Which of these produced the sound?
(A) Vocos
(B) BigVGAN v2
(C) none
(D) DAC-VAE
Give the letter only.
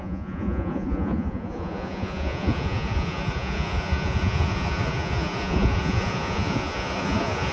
A